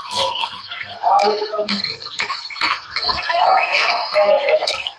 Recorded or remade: remade